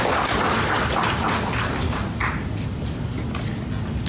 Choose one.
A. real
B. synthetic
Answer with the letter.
A